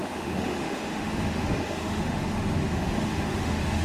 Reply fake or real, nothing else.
fake